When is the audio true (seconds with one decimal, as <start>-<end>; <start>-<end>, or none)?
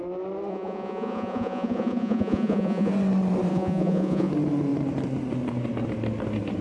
0.0-0.5; 2.9-3.5; 4.3-6.6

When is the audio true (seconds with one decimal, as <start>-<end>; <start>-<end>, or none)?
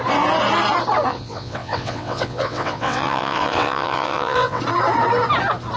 0.0-1.1; 4.6-5.8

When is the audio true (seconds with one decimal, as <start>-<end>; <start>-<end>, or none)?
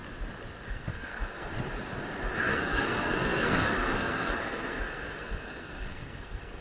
0.0-0.7; 1.5-2.4